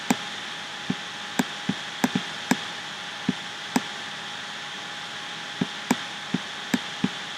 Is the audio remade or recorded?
recorded